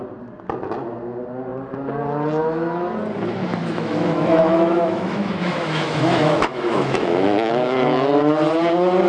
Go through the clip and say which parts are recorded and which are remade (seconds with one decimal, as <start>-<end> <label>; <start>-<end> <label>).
0.0-3.6 recorded; 3.6-7.5 remade; 7.5-9.1 recorded